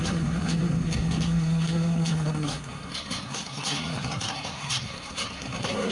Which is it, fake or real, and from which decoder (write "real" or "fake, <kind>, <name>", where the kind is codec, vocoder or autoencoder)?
fake, codec, SNAC